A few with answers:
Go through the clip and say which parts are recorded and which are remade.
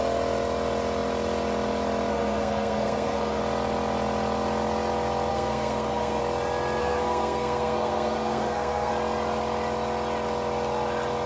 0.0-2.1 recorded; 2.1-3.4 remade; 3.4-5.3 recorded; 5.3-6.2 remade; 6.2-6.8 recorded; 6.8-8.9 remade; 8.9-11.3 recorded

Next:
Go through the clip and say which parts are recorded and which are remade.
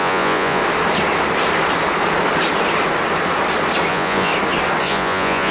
0.0-0.6 remade; 0.6-3.9 recorded; 3.9-4.3 remade; 4.3-4.8 recorded; 4.8-5.5 remade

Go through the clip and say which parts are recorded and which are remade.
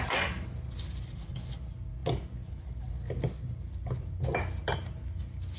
0.0-5.6 recorded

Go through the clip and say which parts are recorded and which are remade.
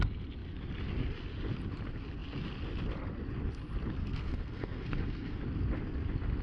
0.0-4.0 recorded; 4.0-5.4 remade; 5.4-6.4 recorded